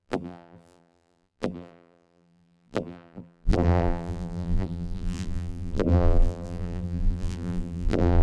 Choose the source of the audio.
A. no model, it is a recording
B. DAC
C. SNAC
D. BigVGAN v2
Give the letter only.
D